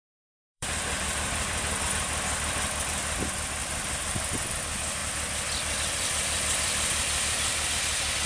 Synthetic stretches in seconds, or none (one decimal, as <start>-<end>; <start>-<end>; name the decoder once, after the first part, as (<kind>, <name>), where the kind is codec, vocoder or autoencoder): 0.0-1.8 (vocoder, BigVGAN v2); 3.6-4.6; 5.0-7.7